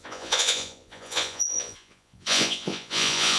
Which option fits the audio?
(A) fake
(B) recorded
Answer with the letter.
A